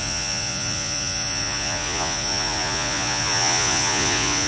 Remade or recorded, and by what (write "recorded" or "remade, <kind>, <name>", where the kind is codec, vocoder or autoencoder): remade, vocoder, Vocos